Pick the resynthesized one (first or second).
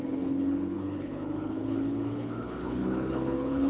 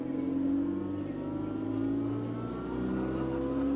first